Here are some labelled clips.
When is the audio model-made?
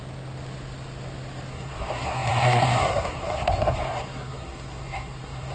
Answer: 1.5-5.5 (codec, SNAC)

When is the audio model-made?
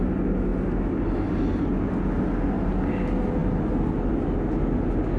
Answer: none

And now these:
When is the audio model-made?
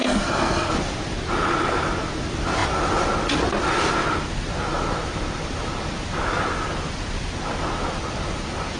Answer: 0.0-0.7 (codec, SNAC)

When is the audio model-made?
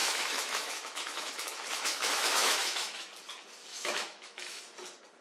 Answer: 0.0-3.1 (autoencoder, DAC-VAE); 3.7-4.6